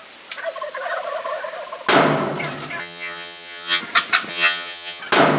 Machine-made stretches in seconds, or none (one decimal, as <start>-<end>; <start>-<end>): 2.8-3.8; 4.3-5.0